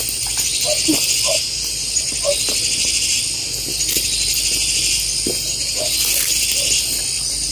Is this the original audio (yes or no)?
yes